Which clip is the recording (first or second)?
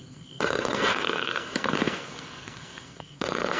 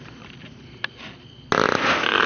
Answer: second